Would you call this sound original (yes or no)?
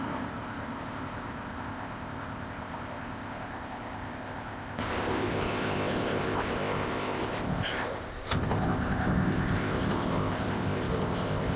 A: no